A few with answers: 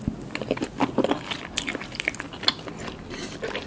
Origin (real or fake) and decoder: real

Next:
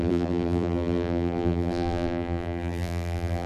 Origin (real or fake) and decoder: fake, vocoder, BigVGAN v2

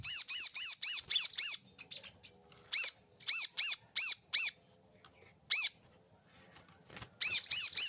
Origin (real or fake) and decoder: real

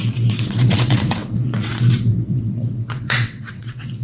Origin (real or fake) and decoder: fake, vocoder, WaveNeXt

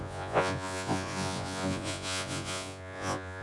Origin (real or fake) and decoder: fake, vocoder, Vocos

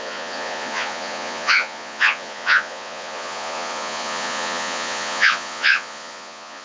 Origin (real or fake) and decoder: fake, vocoder, Vocos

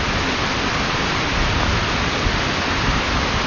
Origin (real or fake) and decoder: real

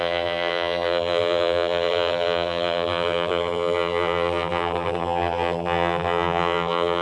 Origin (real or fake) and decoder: fake, vocoder, BigVGAN v2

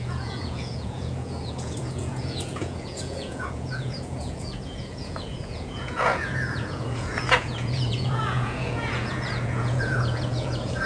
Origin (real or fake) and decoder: fake, vocoder, Vocos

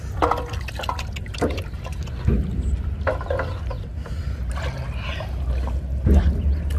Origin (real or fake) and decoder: real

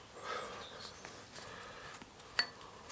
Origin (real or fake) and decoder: real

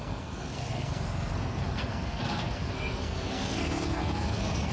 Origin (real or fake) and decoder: fake, codec, SNAC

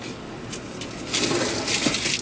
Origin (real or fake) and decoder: real